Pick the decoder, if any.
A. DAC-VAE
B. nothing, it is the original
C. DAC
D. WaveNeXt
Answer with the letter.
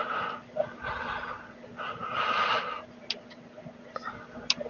B